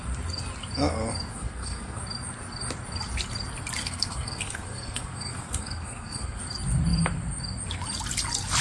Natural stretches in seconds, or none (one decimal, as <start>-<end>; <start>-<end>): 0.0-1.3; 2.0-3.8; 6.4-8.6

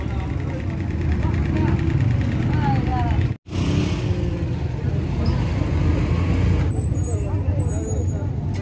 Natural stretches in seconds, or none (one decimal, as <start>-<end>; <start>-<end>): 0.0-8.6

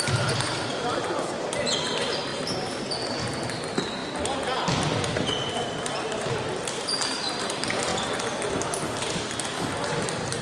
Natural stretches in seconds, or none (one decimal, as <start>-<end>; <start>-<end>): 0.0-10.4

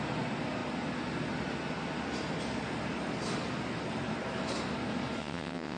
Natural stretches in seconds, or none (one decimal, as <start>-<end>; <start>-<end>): 0.0-5.2

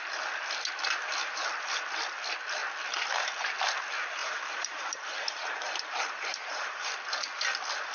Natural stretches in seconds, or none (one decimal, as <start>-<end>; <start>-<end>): 0.0-4.2; 6.9-7.9

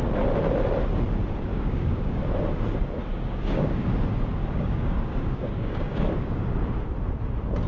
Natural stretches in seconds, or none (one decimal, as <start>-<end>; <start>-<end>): 0.0-1.5; 2.2-3.1; 3.7-4.4; 6.5-7.7

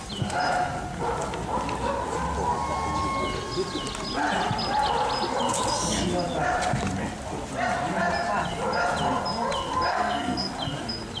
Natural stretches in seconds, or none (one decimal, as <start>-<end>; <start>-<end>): 0.0-9.9; 10.5-11.2